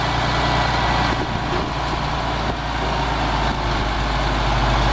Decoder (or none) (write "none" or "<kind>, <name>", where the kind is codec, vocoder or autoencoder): none